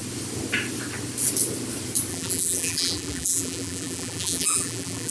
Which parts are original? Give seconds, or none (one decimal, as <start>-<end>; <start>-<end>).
0.0-2.1